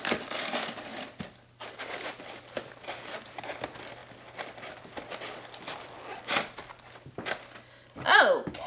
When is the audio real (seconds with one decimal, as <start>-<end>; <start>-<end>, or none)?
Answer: 0.0-0.9; 2.2-8.7